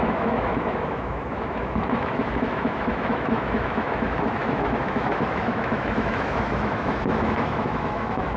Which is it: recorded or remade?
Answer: remade